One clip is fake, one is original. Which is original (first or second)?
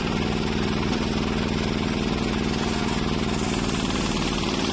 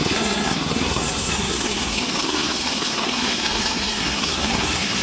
first